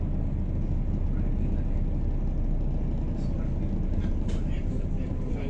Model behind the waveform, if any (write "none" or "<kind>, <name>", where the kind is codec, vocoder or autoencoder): none